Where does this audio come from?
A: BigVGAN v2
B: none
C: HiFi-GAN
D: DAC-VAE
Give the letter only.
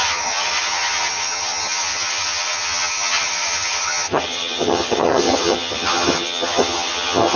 C